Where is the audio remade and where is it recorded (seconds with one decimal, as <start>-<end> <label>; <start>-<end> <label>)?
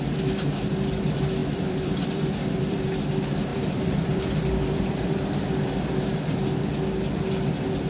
0.0-1.4 recorded; 1.4-2.9 remade; 2.9-3.5 recorded; 3.5-6.7 remade; 6.7-7.9 recorded